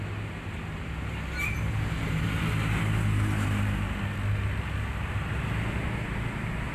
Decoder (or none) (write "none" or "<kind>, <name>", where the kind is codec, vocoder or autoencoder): none